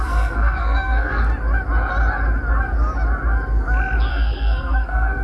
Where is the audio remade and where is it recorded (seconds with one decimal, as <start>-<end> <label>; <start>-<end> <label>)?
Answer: 0.0-1.3 remade; 1.3-4.1 recorded; 4.1-5.2 remade